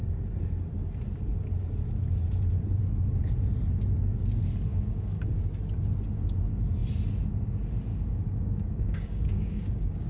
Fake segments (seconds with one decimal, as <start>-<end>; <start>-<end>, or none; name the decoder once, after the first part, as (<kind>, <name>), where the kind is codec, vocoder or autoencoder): 4.7-5.5 (codec, DAC); 7.9-10.1